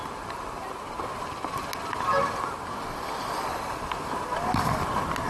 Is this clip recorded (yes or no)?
yes